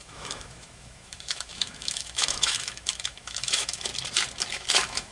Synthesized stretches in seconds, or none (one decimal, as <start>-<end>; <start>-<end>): 0.0-3.9; 4.5-5.1